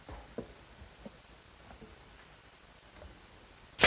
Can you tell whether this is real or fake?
real